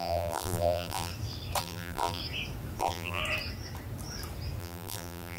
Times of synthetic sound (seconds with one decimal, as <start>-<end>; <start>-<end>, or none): 0.0-1.1; 1.6-2.2; 2.8-3.2; 4.6-5.4